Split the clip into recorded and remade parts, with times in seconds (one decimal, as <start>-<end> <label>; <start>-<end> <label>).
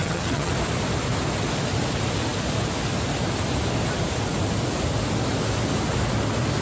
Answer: 0.0-0.5 remade; 0.5-6.6 recorded